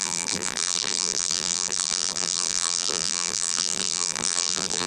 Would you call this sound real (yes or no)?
no